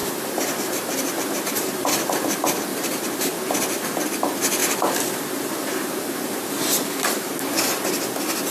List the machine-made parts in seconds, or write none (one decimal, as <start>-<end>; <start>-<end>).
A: 0.0-1.9; 2.7-3.3; 4.6-7.9